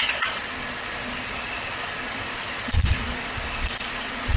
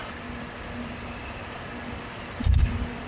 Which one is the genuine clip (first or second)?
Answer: second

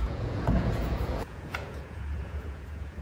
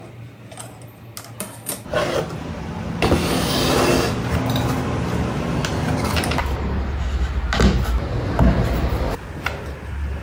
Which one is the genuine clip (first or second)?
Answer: second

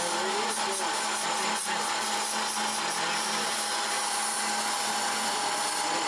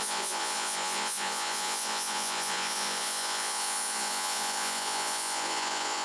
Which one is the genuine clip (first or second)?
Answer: first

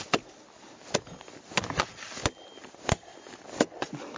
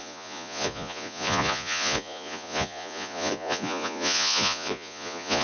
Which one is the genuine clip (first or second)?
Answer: first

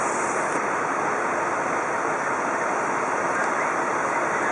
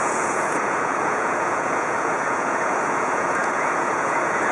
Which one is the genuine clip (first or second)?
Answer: first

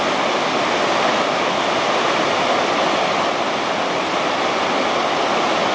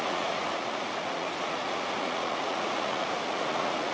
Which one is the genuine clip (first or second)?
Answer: first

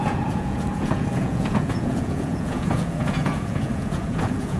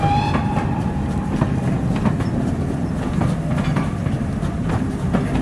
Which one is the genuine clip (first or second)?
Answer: second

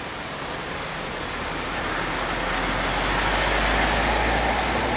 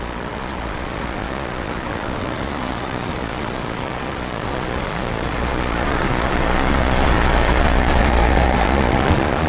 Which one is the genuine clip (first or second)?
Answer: first